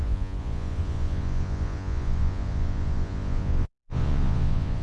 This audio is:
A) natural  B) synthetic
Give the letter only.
B